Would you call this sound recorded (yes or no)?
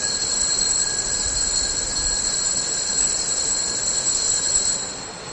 yes